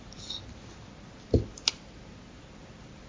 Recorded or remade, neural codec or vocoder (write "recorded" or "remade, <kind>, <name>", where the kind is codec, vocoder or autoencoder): recorded